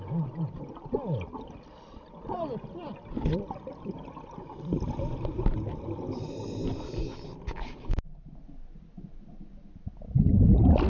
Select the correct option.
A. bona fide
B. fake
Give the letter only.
A